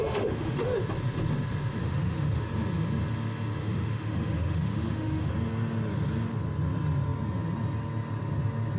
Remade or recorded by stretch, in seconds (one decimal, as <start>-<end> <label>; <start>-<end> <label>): 0.0-0.8 remade; 0.8-1.8 recorded; 1.8-2.4 remade; 2.4-3.6 recorded; 3.6-5.3 remade; 5.3-8.8 recorded